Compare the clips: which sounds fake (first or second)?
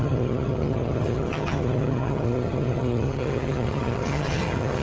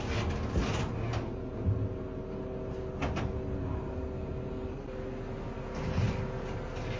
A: first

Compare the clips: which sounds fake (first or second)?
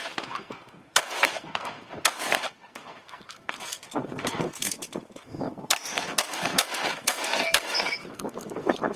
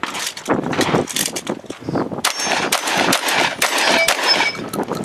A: first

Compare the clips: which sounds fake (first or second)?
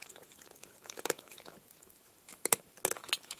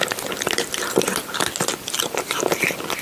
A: first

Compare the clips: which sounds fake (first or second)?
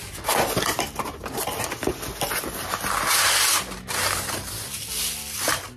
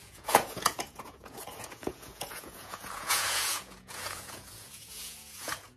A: second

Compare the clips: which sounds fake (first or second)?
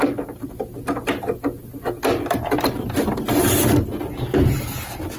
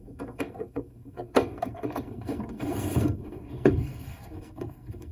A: second